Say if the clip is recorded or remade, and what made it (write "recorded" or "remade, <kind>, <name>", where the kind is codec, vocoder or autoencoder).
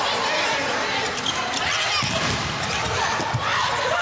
recorded